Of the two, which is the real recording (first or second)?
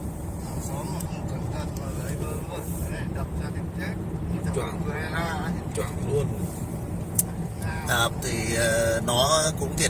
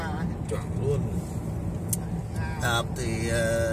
second